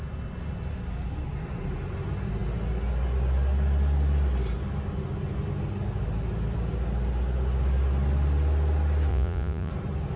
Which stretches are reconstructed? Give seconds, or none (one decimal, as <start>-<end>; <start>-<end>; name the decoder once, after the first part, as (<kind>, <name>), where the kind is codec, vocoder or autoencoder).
9.1-9.7 (vocoder, Vocos)